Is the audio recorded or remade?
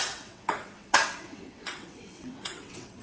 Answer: remade